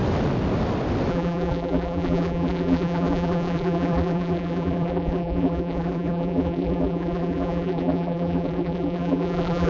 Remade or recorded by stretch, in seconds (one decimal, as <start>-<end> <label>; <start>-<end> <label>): 0.0-1.1 recorded; 1.1-9.7 remade